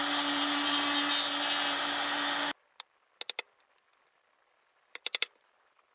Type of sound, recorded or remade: recorded